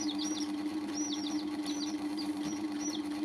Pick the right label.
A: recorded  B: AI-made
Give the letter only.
B